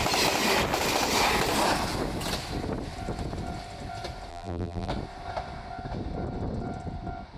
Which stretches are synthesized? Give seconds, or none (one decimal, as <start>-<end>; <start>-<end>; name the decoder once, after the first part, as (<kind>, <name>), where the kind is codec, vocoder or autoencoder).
4.3-4.9 (vocoder, BigVGAN v2)

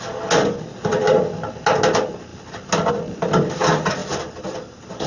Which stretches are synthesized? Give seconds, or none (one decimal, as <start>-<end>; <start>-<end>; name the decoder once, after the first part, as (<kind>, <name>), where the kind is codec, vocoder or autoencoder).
none

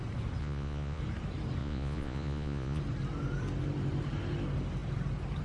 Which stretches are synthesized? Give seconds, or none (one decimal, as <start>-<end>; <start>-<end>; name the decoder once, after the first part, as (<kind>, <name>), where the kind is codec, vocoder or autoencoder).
0.4-1.0 (vocoder, Vocos); 1.6-2.8

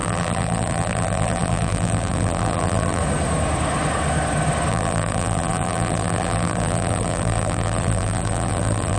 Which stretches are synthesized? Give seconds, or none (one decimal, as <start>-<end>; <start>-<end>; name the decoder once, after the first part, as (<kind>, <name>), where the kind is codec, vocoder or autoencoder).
0.0-3.0 (vocoder, BigVGAN v2); 4.7-9.0

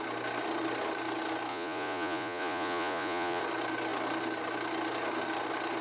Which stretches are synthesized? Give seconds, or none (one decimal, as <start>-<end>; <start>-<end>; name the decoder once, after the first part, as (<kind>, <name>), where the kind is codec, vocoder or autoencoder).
1.5-3.4 (vocoder, Vocos)